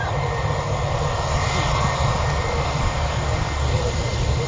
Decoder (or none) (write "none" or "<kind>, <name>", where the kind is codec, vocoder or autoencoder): none